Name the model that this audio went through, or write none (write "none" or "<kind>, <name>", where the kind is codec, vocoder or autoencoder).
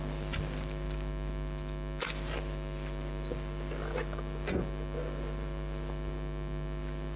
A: none